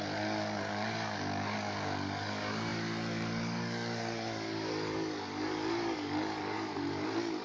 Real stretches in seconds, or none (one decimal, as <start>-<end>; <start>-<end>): none